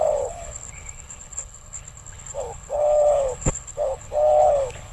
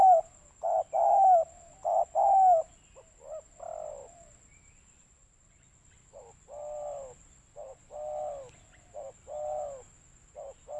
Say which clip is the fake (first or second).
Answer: first